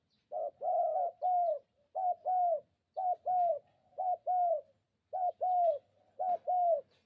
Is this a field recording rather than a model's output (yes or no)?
yes